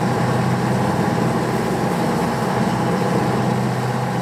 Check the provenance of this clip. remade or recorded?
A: recorded